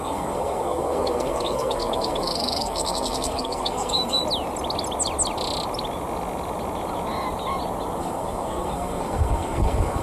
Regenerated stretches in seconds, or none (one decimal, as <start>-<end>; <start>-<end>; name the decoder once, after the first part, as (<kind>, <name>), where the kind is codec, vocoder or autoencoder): 0.0-4.2 (codec, SNAC); 8.0-10.0